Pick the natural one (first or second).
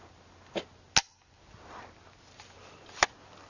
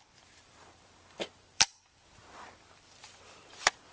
first